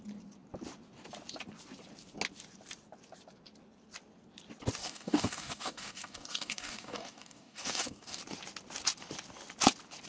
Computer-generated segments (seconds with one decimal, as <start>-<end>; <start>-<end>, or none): 4.8-8.2